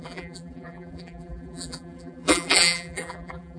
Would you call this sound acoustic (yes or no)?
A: no